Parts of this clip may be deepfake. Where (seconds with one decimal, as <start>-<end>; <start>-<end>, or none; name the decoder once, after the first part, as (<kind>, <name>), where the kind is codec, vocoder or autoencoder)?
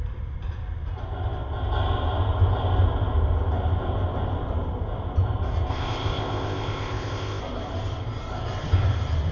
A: 5.7-7.4 (codec, ZipCodec)